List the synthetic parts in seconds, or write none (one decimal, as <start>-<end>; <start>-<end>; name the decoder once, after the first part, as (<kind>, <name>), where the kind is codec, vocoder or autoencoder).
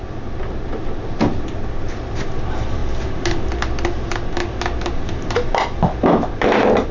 none